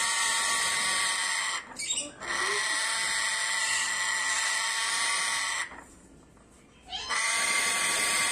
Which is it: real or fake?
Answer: real